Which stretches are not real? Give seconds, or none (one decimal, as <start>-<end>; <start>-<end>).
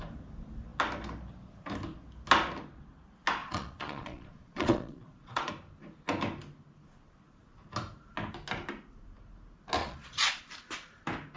3.4-5.5; 9.8-10.4